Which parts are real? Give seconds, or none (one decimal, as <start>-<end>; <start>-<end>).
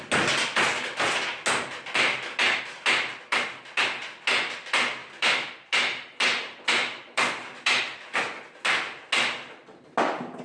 0.0-5.0; 7.8-10.4